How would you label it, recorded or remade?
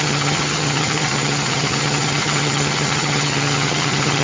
remade